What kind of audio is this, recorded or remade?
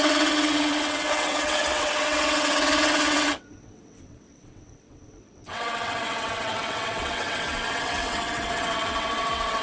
remade